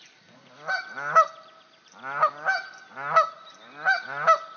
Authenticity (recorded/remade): recorded